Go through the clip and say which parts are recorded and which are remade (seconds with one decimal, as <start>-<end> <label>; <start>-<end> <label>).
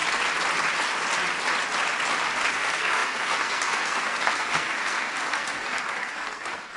0.0-2.5 recorded; 2.5-6.8 remade